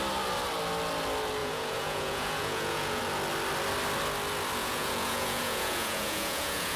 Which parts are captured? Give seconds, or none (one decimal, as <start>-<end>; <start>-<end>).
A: 0.0-1.4; 3.0-4.6